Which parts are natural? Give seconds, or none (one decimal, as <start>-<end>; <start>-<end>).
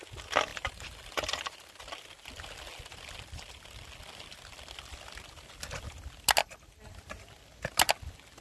0.0-0.5; 1.7-6.4; 6.9-8.4